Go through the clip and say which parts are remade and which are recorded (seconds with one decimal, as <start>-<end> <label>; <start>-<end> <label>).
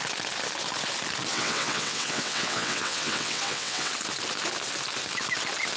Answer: 0.0-1.3 recorded; 1.3-3.9 remade; 3.9-5.8 recorded